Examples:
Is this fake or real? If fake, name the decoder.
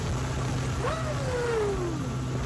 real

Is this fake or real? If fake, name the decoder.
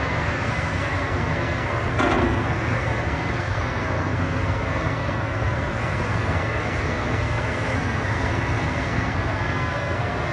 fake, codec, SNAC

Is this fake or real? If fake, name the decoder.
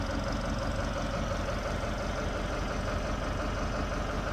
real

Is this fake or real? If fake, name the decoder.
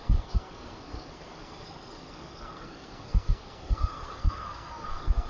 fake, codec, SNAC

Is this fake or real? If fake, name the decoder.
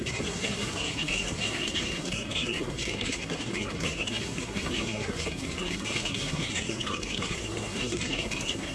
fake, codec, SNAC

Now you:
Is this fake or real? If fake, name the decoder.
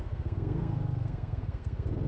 fake, codec, SNAC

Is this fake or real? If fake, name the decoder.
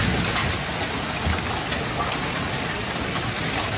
real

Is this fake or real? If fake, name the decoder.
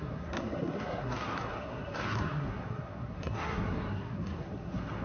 fake, codec, SNAC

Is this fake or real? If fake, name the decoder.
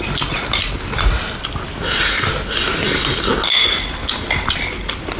real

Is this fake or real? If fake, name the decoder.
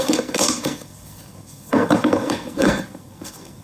fake, codec, SNAC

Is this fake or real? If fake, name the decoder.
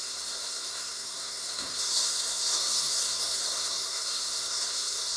fake, codec, SNAC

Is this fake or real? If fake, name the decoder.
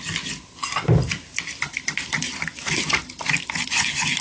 real